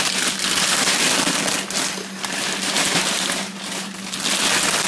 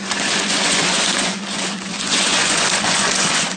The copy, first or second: second